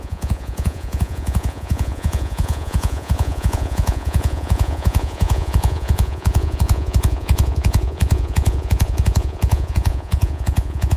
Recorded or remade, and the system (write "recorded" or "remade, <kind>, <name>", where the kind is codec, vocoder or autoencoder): remade, vocoder, Vocos